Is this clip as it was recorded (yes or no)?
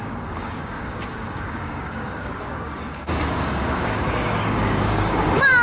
no